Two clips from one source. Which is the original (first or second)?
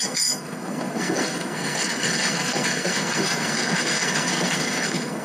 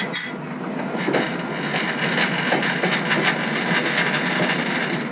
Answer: second